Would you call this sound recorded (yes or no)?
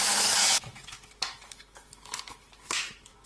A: no